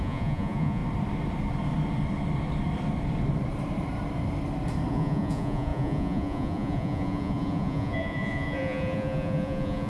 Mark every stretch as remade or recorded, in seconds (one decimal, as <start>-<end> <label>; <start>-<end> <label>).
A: 0.0-0.8 remade; 0.8-4.9 recorded; 4.9-9.9 remade